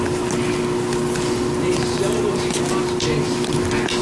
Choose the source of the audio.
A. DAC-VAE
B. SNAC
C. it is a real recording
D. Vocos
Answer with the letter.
C